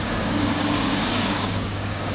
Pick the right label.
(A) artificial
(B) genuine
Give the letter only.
A